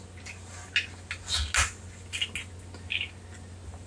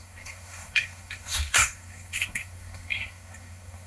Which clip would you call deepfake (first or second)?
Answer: second